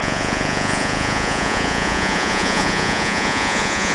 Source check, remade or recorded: remade